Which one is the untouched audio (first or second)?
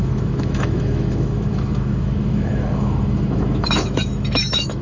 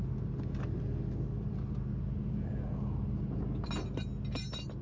second